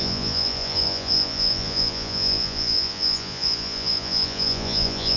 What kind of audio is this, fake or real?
fake